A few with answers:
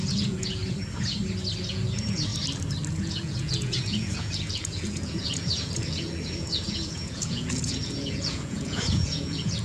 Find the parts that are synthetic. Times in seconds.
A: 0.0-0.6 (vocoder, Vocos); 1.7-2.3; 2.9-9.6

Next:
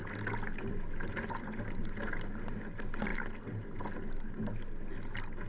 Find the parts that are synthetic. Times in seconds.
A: none